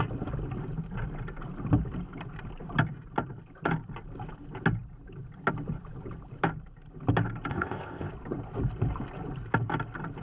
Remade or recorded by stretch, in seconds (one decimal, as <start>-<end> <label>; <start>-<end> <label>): 0.0-7.5 recorded; 7.5-8.1 remade; 8.1-10.2 recorded